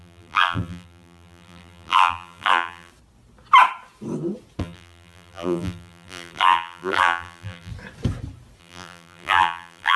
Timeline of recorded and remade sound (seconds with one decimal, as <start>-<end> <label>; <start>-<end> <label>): 0.0-2.9 remade; 2.9-4.6 recorded; 4.6-7.7 remade; 7.7-8.6 recorded; 8.6-10.0 remade